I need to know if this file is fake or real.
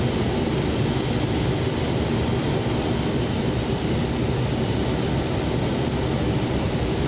real